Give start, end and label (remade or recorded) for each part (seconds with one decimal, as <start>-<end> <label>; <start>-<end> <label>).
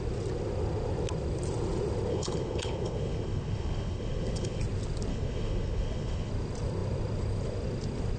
0.0-2.1 recorded; 2.1-4.6 remade; 4.6-5.1 recorded; 5.1-6.3 remade; 6.3-8.2 recorded